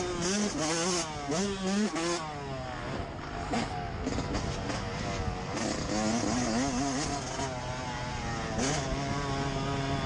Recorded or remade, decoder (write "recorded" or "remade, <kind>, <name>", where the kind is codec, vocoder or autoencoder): recorded